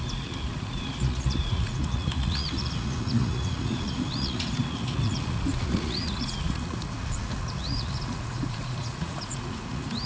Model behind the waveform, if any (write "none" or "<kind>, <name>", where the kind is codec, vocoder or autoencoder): vocoder, Vocos